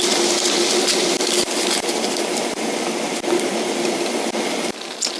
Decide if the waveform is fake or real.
real